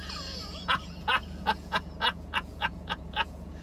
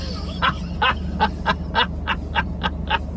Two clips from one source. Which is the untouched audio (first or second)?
second